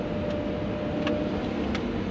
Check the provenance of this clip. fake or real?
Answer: real